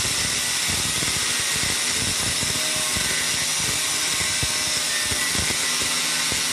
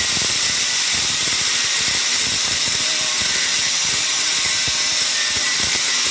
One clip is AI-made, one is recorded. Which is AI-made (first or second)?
second